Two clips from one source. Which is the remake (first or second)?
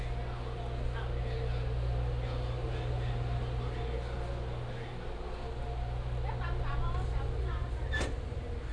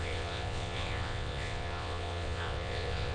second